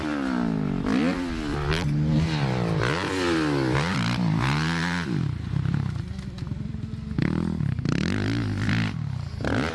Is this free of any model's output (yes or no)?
yes